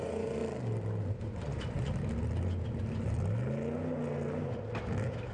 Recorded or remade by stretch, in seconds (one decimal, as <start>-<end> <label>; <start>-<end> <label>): 0.0-0.4 remade; 0.4-1.2 recorded; 1.2-1.9 remade; 1.9-5.3 recorded